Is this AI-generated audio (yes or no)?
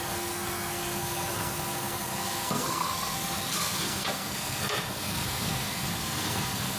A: yes